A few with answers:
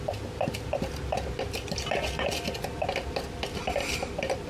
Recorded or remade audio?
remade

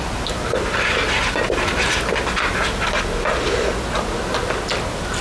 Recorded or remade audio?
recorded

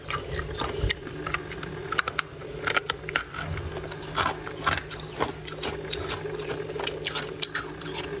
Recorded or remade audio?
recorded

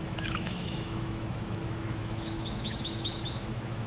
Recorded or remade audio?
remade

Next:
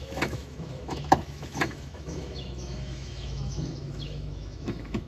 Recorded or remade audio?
remade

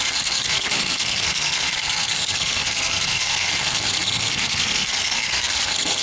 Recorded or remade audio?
remade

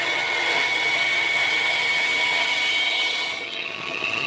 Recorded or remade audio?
remade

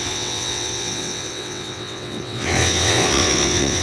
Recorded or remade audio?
remade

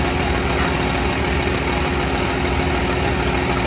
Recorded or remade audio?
recorded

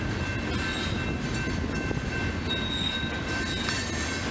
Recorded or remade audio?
recorded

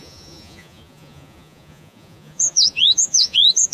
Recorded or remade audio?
remade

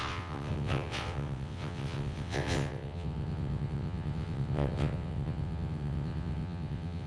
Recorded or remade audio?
remade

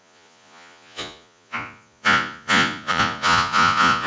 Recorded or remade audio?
remade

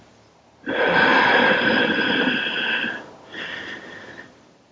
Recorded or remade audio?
recorded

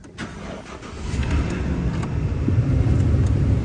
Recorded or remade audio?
recorded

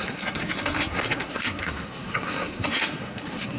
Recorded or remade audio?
remade